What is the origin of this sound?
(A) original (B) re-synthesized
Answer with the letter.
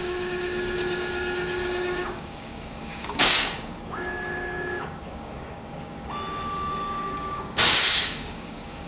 B